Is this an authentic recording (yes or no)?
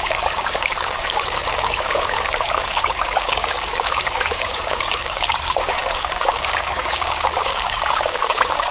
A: no